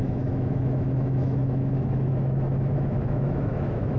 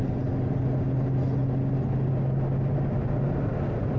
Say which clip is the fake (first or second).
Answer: first